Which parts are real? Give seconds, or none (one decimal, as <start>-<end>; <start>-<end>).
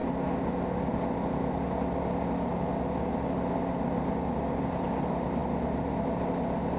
0.0-6.8